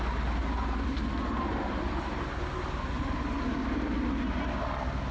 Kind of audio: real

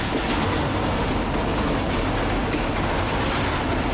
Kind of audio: real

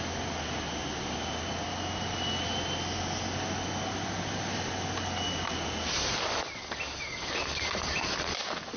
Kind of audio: real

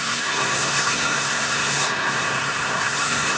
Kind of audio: fake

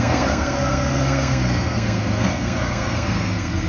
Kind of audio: fake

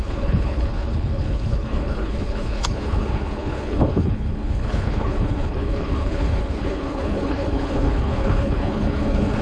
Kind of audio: fake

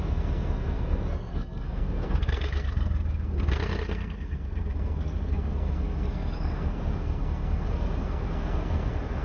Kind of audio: fake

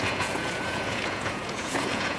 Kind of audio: fake